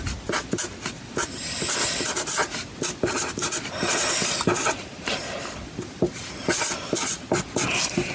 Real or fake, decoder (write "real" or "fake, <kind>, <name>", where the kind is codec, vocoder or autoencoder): real